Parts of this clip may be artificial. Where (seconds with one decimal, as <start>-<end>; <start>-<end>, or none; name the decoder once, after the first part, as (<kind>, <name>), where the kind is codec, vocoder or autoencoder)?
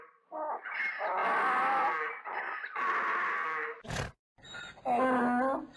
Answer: none